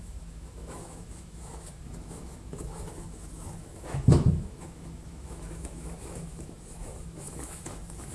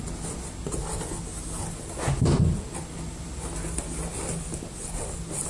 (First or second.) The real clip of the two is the second